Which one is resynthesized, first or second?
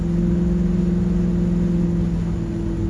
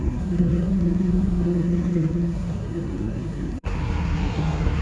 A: second